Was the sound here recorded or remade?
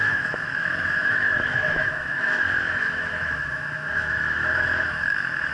remade